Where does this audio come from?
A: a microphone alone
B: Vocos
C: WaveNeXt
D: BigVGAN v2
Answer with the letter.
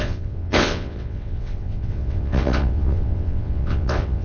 C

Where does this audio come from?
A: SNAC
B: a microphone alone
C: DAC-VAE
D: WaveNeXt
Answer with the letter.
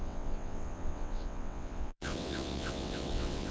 D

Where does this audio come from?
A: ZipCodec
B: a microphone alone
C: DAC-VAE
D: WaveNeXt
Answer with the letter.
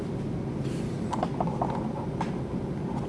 B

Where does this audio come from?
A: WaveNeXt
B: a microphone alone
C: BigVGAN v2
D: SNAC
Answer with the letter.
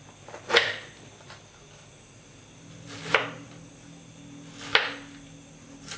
B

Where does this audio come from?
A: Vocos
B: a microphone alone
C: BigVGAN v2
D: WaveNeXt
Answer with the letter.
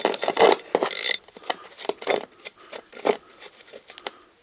B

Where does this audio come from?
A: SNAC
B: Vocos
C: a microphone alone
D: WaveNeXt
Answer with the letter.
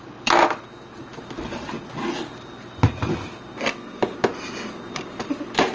C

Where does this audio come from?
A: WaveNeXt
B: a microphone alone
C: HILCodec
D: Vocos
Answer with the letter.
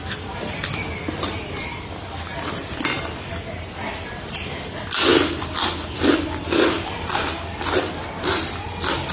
B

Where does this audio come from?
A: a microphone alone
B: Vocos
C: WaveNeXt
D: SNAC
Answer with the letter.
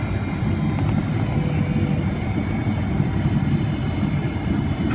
A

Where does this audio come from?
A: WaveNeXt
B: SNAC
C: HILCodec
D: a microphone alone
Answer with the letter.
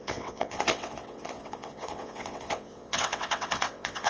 A